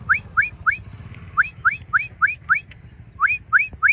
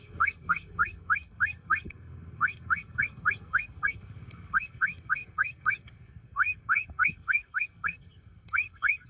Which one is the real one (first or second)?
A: first